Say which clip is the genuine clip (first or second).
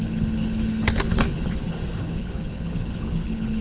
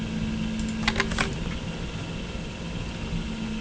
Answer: second